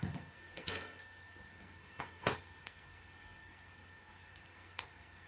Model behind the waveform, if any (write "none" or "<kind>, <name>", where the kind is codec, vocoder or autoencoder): codec, SNAC